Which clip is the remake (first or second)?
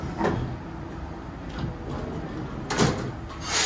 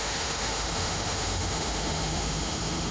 second